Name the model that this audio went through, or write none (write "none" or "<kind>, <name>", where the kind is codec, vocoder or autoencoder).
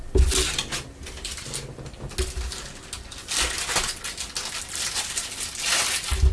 none